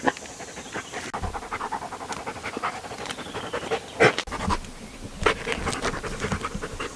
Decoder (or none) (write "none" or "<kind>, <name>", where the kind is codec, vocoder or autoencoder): none